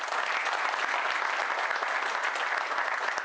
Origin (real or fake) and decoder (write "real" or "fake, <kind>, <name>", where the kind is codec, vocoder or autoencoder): real